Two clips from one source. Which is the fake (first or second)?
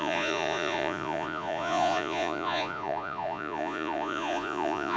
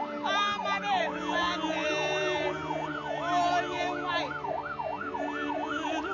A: first